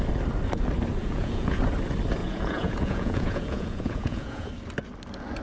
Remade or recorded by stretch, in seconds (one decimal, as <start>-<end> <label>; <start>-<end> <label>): 0.0-1.0 recorded; 1.0-1.6 remade; 1.6-2.2 recorded; 2.2-4.5 remade; 4.5-5.4 recorded